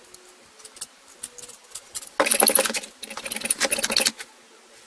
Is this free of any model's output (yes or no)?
yes